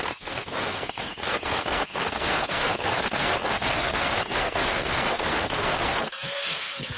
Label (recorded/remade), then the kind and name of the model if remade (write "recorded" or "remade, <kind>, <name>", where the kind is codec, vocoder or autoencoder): remade, codec, SNAC